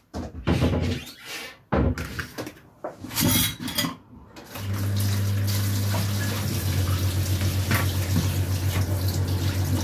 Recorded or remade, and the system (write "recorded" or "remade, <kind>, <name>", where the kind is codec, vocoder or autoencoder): recorded